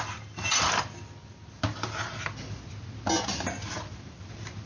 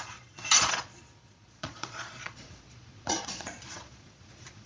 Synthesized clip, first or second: second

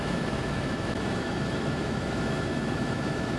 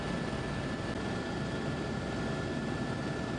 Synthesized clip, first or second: first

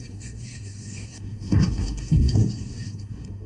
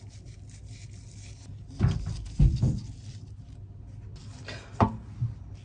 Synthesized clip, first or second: first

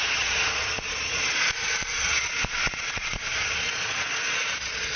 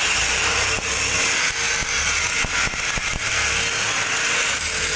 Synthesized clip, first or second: first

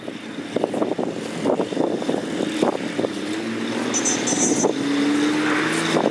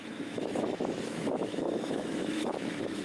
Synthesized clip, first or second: second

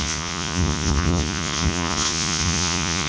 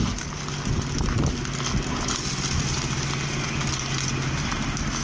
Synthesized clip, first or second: first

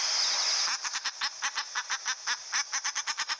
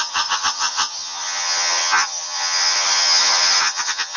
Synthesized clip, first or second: second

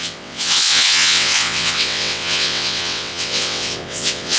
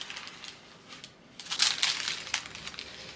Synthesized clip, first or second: first